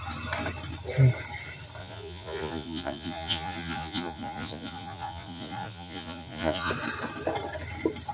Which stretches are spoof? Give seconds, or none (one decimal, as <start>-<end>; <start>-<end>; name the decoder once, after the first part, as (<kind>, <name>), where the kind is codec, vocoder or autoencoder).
1.8-6.7 (vocoder, Vocos)